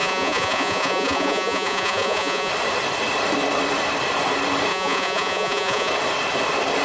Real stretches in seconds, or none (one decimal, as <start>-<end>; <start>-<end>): 2.5-4.7; 5.9-6.8